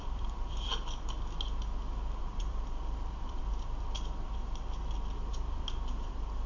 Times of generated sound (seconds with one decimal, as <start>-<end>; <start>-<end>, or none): 0.0-0.7; 2.2-3.4; 6.0-6.5